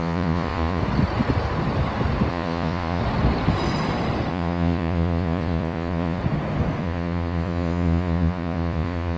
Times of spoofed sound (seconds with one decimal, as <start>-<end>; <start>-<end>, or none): 0.0-0.8; 2.3-3.0; 4.3-6.2; 6.8-9.2